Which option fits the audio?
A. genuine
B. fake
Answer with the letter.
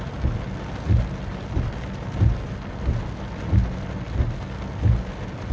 A